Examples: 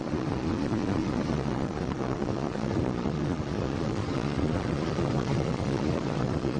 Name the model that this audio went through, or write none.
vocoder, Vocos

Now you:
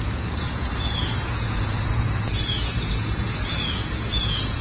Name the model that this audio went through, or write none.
vocoder, Vocos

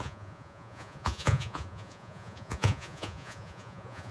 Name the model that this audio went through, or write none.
vocoder, Vocos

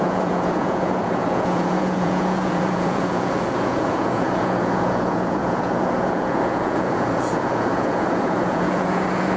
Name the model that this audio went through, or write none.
vocoder, Vocos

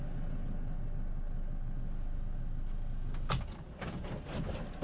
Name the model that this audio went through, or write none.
none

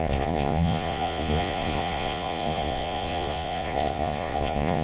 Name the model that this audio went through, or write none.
vocoder, Vocos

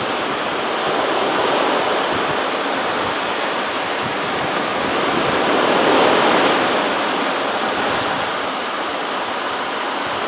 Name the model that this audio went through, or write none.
none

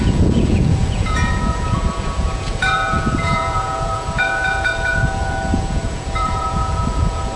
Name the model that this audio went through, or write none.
vocoder, Vocos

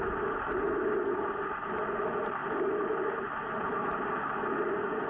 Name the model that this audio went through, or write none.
none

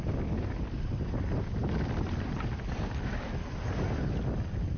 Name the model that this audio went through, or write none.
none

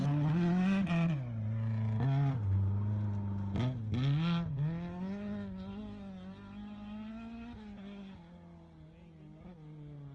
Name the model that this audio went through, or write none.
none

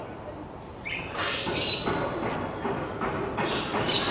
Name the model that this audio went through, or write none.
none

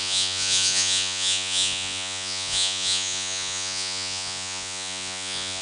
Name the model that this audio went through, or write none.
vocoder, Vocos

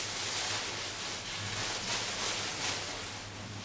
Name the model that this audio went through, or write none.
none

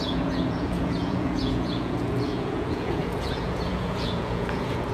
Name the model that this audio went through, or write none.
vocoder, Vocos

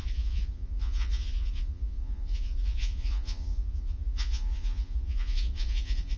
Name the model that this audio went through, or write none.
vocoder, Vocos